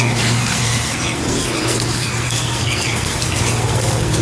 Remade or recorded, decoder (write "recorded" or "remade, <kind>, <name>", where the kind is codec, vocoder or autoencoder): remade, codec, SNAC